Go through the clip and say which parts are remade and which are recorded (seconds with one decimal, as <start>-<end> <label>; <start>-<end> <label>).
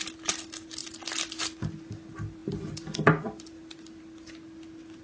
0.0-0.8 recorded; 0.8-1.7 remade; 1.7-2.4 recorded; 2.4-4.0 remade; 4.0-5.0 recorded